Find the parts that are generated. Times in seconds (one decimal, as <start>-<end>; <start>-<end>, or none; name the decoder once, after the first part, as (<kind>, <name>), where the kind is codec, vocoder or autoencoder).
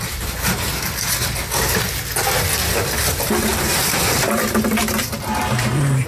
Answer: 0.0-0.7 (vocoder, BigVGAN v2); 2.7-4.8; 5.4-6.1